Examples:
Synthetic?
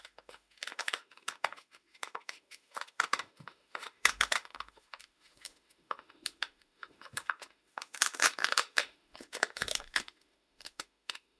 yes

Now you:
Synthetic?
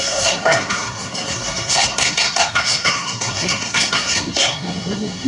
yes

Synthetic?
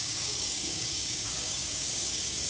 yes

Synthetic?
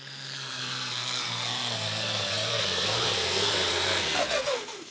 yes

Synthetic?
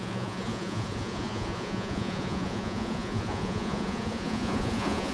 yes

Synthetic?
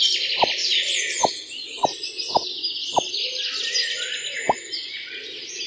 no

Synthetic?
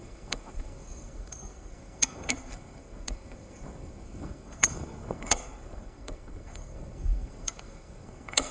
yes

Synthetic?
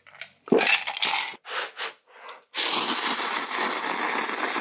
no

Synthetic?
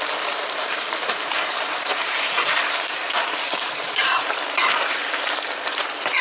yes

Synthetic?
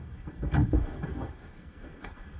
yes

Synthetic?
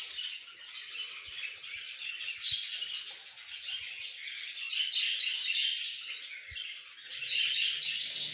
no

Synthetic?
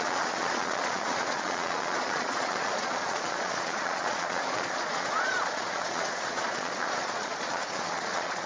yes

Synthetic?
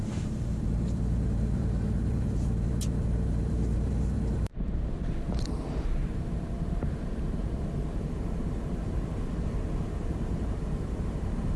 yes